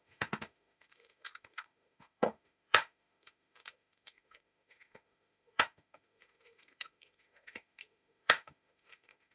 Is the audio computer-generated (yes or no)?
yes